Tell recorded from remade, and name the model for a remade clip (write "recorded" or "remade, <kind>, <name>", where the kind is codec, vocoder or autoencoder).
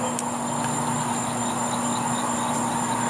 recorded